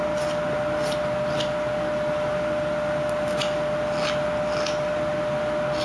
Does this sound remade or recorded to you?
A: recorded